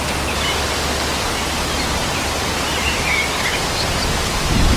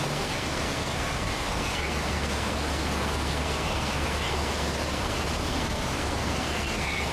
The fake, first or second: second